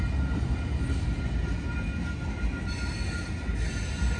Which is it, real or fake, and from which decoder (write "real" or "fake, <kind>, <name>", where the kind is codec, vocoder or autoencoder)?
real